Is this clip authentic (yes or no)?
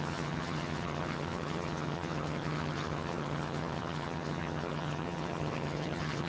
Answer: no